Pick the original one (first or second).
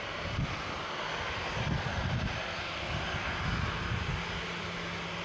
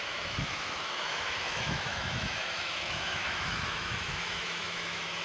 first